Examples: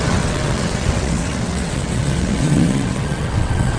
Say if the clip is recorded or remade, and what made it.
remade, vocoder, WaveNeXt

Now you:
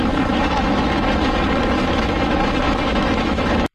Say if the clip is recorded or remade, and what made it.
remade, autoencoder, DAC-VAE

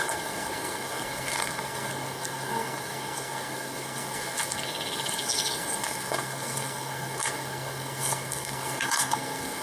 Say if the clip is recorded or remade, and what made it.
remade, codec, SNAC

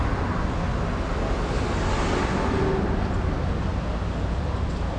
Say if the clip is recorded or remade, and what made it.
recorded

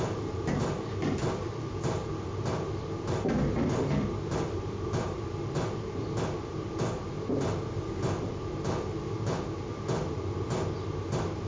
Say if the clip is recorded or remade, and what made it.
recorded